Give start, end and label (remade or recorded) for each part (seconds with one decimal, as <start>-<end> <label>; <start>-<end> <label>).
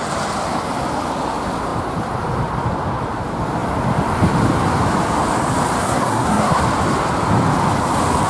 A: 0.0-5.8 recorded; 5.8-6.6 remade; 6.6-8.3 recorded